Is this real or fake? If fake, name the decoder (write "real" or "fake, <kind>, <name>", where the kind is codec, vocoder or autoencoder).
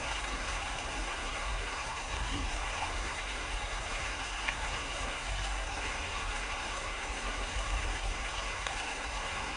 fake, codec, SNAC